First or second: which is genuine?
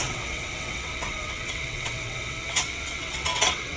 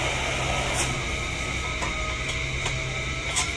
second